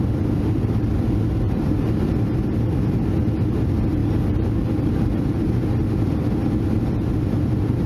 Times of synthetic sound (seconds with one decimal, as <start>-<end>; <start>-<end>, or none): none